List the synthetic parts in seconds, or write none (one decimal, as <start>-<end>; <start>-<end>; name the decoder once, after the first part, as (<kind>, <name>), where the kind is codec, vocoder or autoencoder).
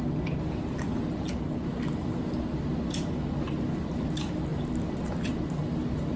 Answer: none